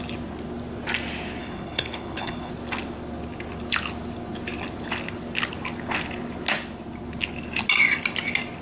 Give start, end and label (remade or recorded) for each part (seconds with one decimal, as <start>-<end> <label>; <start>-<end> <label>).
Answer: 0.0-1.4 recorded; 1.4-2.5 remade; 2.5-8.6 recorded